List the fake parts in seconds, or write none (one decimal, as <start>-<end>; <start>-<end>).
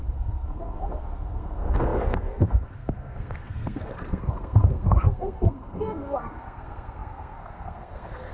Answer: 0.0-8.3